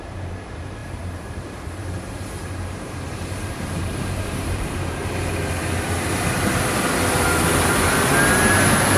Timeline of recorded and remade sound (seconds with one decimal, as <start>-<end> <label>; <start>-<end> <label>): 0.0-5.0 remade; 5.0-9.0 recorded